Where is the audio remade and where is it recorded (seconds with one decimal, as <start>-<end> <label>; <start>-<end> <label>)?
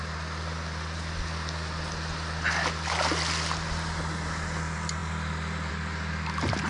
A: 0.0-6.7 recorded